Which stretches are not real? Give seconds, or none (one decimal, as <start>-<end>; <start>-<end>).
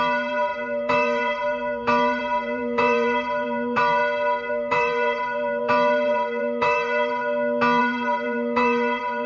0.0-4.0; 4.5-7.2; 7.8-9.3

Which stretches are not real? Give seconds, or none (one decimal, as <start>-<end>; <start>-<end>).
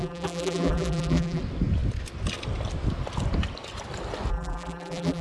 0.0-1.4; 4.3-5.2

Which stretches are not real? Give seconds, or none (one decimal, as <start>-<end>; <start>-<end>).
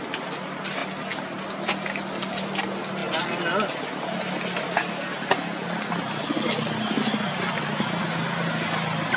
none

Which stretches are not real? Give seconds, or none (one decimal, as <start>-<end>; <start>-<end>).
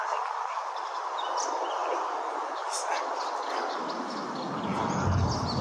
none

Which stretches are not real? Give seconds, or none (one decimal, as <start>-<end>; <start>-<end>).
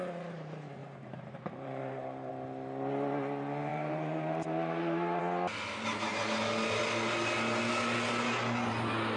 0.8-2.3; 3.7-5.2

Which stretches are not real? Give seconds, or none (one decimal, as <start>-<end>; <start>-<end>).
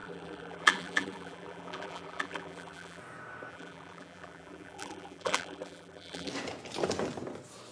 0.0-3.0; 3.5-6.3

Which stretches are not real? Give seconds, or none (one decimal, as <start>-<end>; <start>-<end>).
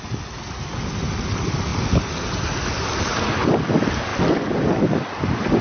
none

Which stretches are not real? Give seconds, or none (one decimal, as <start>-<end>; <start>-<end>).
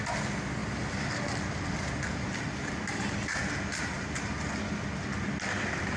0.6-1.7